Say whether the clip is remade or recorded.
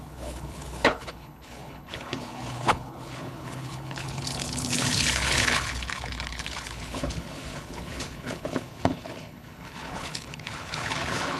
remade